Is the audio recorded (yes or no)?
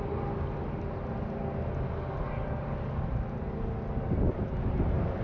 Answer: yes